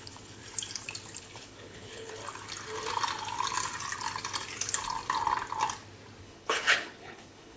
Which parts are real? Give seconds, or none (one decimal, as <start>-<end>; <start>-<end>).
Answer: 0.4-1.2; 2.2-6.2